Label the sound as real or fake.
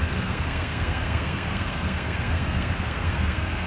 fake